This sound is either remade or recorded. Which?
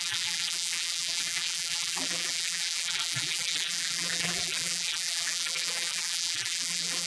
remade